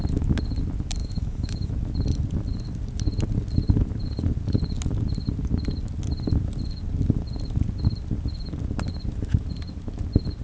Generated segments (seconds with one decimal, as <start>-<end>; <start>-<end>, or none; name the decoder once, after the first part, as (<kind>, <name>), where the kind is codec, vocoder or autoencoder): 1.0-1.7 (autoencoder, DAC-VAE)